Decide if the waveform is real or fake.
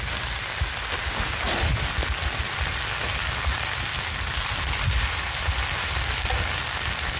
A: real